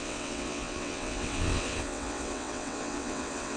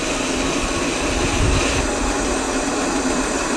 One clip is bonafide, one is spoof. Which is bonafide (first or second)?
second